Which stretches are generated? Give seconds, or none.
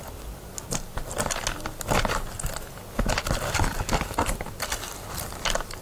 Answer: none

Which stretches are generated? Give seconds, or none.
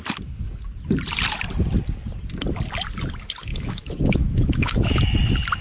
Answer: 3.5-5.0 (autoencoder, DAC-VAE)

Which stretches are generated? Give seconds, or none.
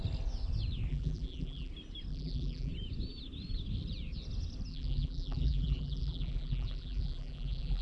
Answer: 0.9-1.7 (vocoder, BigVGAN v2); 2.1-2.7; 4.7-7.8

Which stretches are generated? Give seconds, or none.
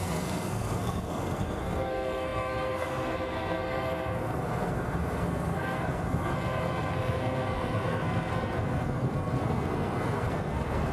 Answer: 0.0-10.9 (codec, SNAC)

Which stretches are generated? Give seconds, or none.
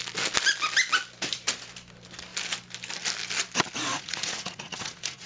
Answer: 3.9-5.3 (vocoder, Vocos)